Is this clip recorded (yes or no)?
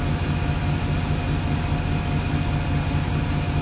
yes